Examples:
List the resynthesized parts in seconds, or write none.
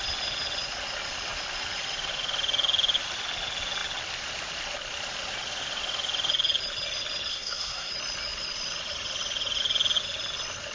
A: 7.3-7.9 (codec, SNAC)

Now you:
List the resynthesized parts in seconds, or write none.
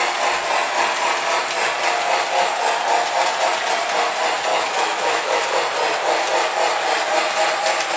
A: 4.5-5.4 (autoencoder, DAC-VAE)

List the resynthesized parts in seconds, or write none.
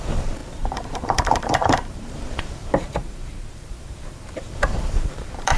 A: 0.0-5.6 (vocoder, BigVGAN v2)